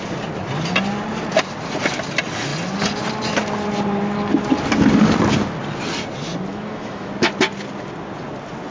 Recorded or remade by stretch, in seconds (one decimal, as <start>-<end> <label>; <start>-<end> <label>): 0.0-6.5 recorded; 6.5-7.1 remade; 7.1-8.7 recorded